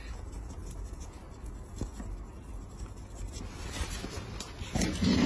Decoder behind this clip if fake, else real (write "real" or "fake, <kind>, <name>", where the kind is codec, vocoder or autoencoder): real